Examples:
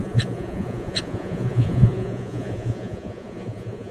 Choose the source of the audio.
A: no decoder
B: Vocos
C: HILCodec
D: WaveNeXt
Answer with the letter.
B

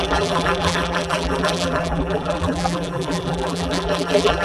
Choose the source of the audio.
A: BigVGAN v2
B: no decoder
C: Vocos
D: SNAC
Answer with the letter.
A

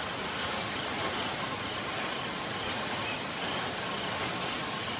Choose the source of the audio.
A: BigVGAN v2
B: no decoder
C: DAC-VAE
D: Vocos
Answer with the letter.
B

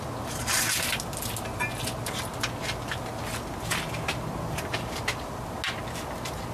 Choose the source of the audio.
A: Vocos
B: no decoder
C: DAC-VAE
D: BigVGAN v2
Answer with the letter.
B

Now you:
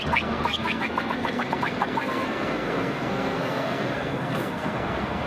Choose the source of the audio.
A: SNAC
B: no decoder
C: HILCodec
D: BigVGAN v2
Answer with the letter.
A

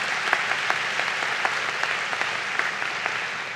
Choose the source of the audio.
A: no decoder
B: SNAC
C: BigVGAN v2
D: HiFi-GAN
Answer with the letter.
A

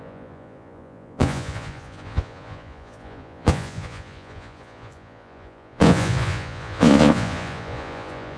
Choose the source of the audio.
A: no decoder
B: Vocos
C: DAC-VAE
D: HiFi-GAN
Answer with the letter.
B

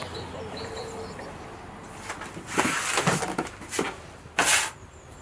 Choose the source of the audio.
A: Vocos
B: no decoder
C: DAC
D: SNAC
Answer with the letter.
B